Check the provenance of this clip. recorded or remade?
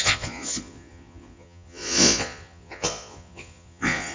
remade